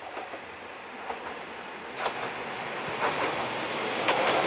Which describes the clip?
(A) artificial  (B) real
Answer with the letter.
B